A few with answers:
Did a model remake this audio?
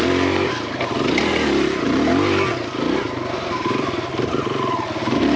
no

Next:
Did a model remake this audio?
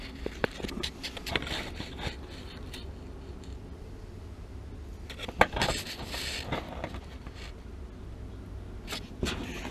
no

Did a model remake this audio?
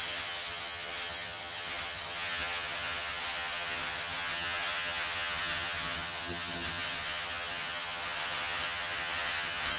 yes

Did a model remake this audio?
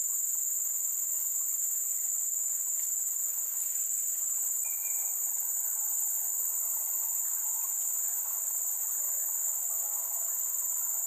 no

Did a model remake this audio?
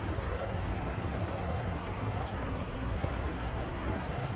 yes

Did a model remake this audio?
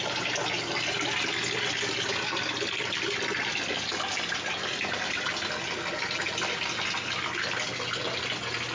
no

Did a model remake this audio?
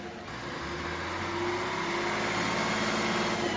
no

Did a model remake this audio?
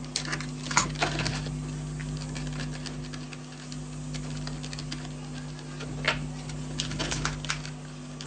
no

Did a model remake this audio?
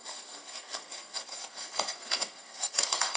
yes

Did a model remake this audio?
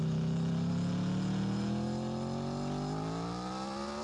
no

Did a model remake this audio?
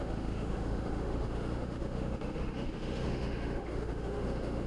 yes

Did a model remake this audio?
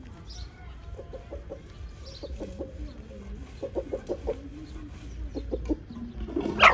no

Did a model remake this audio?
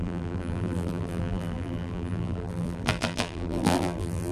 yes